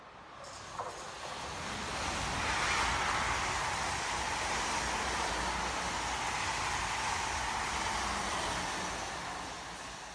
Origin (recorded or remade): recorded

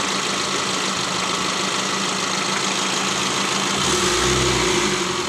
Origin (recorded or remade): recorded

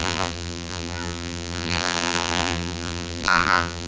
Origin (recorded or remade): remade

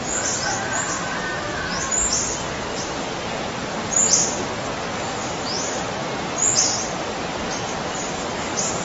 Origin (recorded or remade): recorded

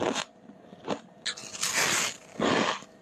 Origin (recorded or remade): recorded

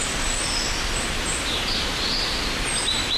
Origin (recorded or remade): remade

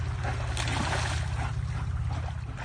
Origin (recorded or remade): recorded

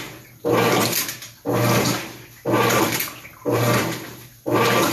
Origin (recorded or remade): recorded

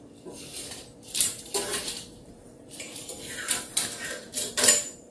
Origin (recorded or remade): remade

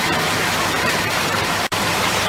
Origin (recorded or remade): remade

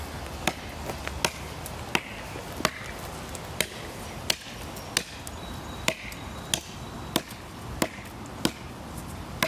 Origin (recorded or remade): recorded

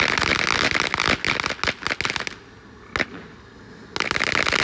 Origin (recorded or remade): recorded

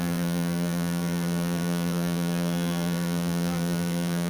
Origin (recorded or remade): remade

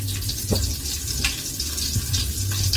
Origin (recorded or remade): recorded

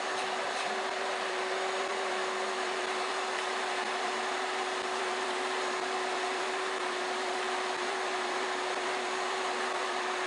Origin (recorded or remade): remade